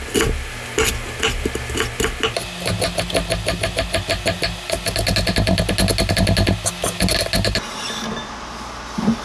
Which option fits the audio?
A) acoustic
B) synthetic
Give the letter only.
A